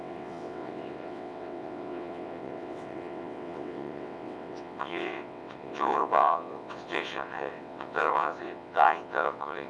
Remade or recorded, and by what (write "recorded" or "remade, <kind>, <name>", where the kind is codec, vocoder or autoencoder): remade, vocoder, WaveNeXt